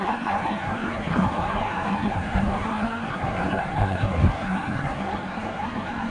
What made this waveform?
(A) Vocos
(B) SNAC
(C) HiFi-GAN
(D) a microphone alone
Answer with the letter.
B